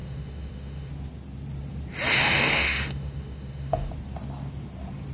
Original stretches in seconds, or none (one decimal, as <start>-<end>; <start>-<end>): 0.9-2.1; 3.9-5.1